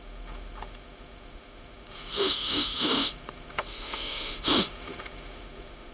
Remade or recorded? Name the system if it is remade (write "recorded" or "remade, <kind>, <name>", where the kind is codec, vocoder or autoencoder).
remade, autoencoder, DAC-VAE